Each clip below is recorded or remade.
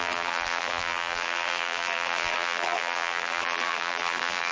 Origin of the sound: remade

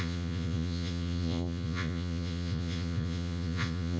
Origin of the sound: remade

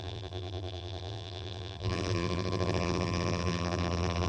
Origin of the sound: remade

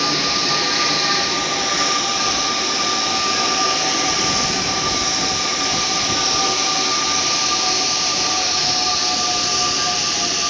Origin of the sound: recorded